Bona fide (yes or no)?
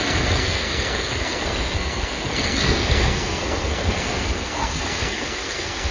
no